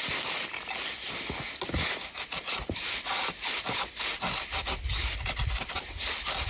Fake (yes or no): no